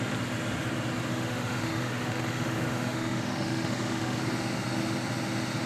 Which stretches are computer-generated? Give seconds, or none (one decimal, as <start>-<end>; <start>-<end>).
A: 1.1-4.2